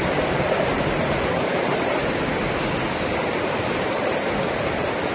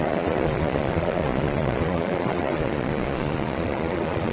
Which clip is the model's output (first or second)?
second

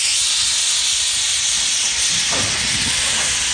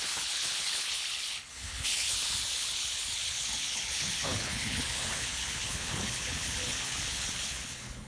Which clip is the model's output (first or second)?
second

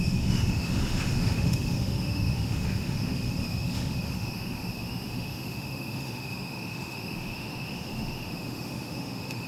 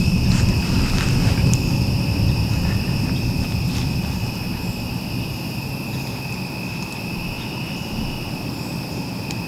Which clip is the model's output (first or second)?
first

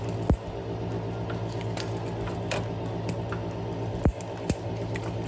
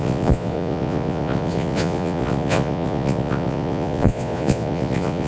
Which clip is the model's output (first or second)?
second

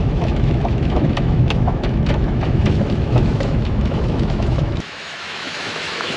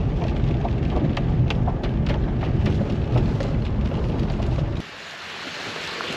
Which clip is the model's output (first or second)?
first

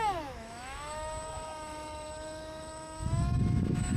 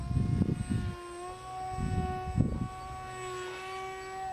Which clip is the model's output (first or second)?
first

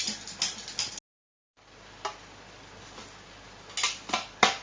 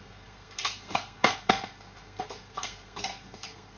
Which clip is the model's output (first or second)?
second